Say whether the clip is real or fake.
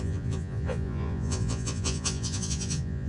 fake